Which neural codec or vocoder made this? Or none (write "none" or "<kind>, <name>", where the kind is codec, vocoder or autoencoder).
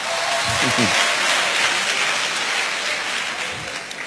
none